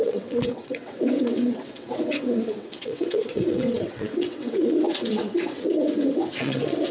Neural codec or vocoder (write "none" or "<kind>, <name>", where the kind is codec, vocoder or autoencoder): vocoder, WaveNeXt